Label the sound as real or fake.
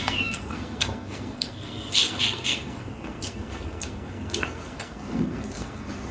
fake